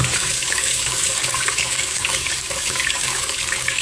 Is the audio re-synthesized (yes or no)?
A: yes